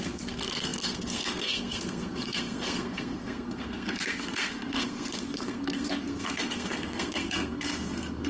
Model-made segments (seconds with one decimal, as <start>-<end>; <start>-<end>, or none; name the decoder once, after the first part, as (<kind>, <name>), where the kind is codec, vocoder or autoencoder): 0.0-8.3 (codec, SNAC)